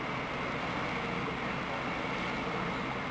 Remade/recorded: recorded